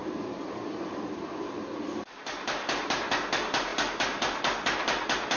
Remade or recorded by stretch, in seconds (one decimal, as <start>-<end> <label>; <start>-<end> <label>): 0.0-5.4 recorded